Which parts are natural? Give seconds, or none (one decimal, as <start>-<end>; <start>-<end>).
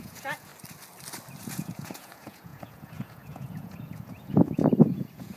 0.5-1.4